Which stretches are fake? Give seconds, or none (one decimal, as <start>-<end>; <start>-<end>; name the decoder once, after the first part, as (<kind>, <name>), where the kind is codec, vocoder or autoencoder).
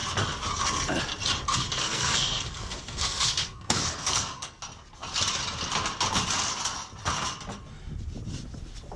1.8-4.6 (codec, SNAC)